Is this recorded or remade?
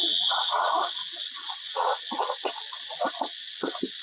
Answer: remade